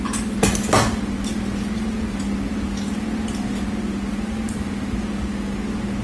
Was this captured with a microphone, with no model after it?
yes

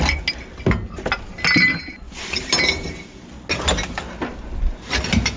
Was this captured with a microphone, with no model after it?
yes